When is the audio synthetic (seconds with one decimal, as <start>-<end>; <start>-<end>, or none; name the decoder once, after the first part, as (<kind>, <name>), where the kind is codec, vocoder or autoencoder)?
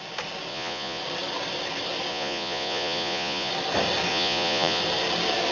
0.5-1.0 (vocoder, Vocos); 2.1-3.5; 4.1-4.8